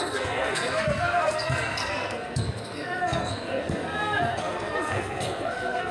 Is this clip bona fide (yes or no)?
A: no